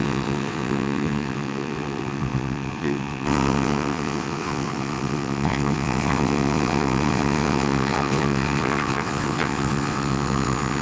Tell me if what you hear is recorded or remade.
remade